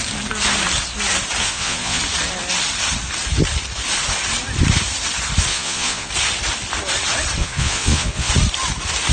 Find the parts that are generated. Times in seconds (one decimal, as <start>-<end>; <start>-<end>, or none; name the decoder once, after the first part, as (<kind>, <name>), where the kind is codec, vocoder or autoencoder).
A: 1.4-2.0 (vocoder, Vocos); 5.5-6.1; 7.4-8.3